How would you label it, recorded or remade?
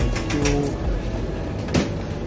recorded